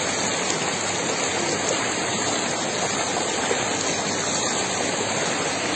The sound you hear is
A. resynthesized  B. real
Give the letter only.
B